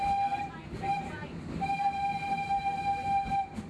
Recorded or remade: recorded